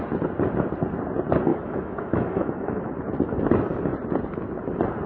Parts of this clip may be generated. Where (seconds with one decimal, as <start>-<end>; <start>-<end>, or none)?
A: 1.5-2.8